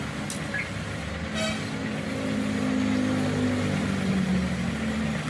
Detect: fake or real real